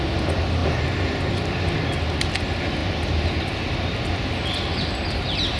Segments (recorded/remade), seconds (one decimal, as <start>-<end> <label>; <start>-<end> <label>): 0.0-5.6 recorded